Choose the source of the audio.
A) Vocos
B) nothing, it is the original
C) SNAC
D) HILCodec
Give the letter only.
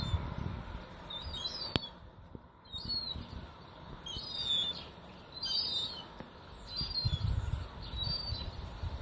B